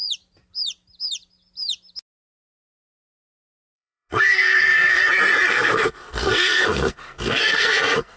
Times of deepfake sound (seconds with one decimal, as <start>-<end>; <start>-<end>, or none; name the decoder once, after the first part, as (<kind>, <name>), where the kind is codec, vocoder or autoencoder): 3.1-5.0 (codec, SNAC); 5.5-8.2